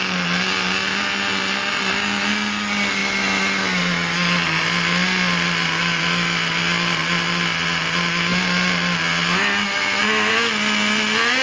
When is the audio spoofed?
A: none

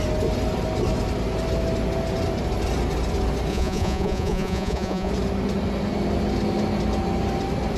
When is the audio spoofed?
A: 3.5-5.1 (vocoder, Vocos)